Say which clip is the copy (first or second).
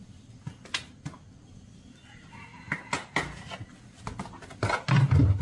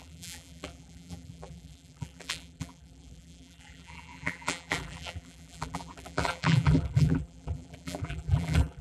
second